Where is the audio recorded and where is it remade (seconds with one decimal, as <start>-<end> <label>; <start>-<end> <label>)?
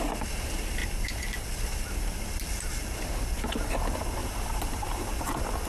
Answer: 0.0-4.2 recorded; 4.2-5.3 remade; 5.3-5.7 recorded